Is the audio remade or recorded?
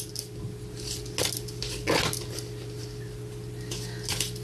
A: recorded